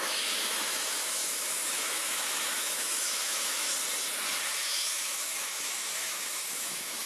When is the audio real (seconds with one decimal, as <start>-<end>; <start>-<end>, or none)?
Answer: 3.7-4.6